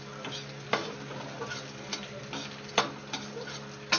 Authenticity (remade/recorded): recorded